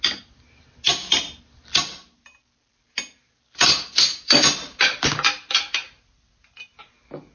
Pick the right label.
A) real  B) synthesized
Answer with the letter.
A